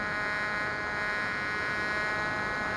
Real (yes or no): yes